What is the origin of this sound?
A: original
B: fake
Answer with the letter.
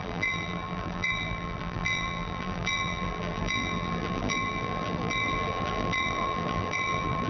B